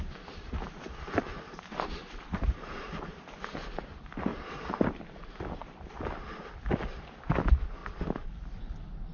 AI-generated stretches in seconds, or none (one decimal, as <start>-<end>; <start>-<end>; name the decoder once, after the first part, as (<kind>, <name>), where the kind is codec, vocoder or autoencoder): 1.3-2.9 (vocoder, BigVGAN v2); 4.3-5.4